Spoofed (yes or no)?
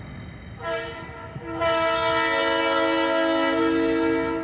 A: no